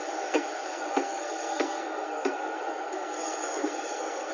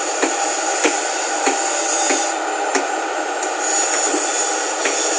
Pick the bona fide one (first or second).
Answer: second